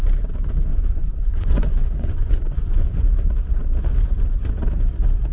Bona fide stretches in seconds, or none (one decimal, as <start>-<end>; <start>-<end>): 0.0-0.7; 3.1-5.3